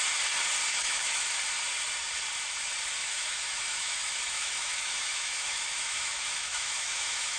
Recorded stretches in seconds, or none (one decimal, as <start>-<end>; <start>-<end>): 0.0-0.7; 1.4-3.0